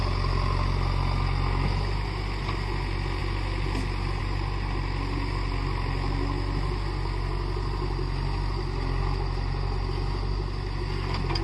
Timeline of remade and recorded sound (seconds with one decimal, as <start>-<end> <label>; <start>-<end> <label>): 0.0-11.4 recorded